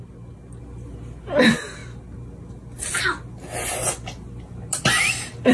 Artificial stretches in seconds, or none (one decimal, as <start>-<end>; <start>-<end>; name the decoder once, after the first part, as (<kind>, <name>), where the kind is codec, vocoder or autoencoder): none